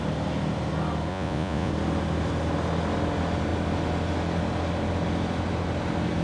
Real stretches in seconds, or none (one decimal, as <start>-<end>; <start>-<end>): 0.0-1.1; 1.7-6.2